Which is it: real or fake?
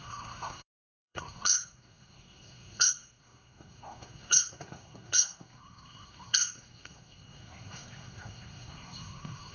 fake